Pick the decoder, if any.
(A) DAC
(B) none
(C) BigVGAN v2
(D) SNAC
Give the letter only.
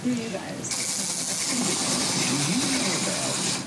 B